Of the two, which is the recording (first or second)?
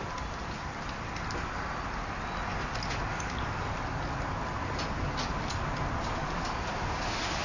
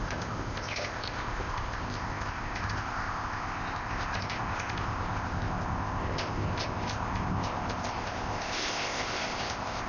first